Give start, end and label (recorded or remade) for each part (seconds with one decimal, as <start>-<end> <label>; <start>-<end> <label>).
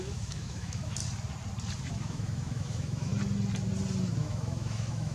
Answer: 0.0-1.0 remade; 1.0-1.9 recorded; 1.9-3.1 remade; 3.1-4.2 recorded; 4.2-5.1 remade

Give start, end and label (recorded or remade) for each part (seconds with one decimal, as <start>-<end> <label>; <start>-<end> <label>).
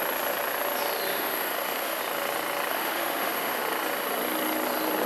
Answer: 0.0-1.1 recorded; 1.1-2.0 remade; 2.0-2.7 recorded; 2.7-3.6 remade; 3.6-5.1 recorded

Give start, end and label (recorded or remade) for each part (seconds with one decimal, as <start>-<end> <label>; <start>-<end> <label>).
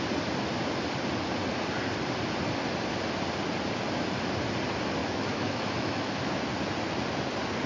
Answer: 0.0-5.0 recorded; 5.0-6.3 remade; 6.3-7.7 recorded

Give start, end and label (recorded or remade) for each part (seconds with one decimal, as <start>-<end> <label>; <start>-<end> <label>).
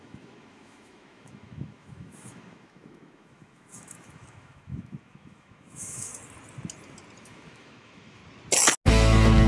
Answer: 0.0-6.1 remade; 6.1-7.2 recorded; 7.2-8.2 remade; 8.2-9.5 recorded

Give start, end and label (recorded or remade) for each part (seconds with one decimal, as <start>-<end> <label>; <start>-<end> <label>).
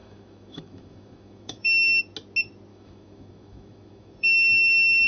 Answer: 0.0-2.0 remade; 2.0-2.7 recorded; 2.7-5.1 remade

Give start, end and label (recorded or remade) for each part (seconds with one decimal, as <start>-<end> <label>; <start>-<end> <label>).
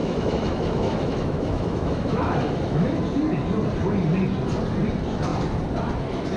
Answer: 0.0-3.0 remade; 3.0-6.4 recorded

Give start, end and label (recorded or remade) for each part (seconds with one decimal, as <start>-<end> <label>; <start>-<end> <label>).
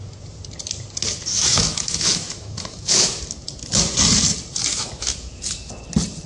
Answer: 0.0-1.3 recorded; 1.3-3.2 remade; 3.2-4.7 recorded; 4.7-5.7 remade; 5.7-6.3 recorded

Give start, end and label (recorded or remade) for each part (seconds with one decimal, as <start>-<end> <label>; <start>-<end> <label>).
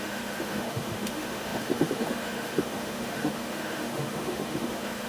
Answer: 0.0-5.1 remade